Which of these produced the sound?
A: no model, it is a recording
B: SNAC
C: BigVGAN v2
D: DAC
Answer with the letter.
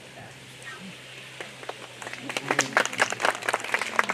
A